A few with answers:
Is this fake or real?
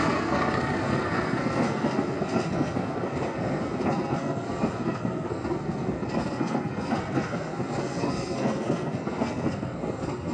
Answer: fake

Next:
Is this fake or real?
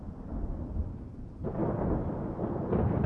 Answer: real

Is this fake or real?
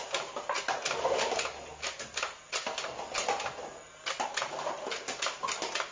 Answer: real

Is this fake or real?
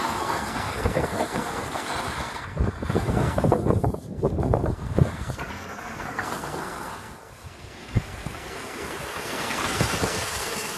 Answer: fake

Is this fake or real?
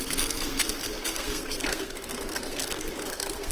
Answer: fake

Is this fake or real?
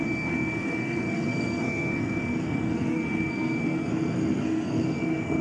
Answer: fake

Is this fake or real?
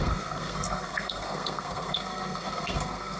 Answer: fake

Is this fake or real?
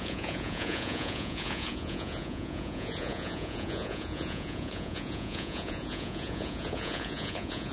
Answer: fake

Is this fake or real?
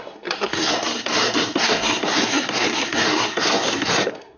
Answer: fake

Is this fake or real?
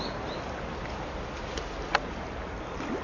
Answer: real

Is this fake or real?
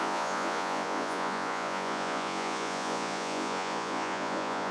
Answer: fake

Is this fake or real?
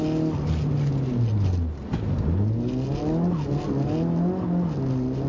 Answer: real